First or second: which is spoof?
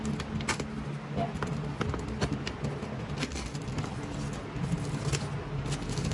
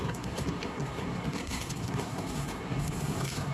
second